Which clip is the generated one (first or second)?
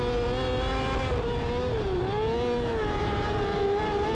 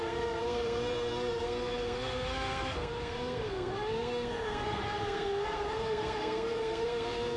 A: second